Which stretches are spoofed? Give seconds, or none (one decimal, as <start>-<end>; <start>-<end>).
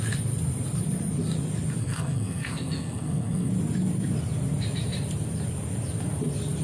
1.8-3.5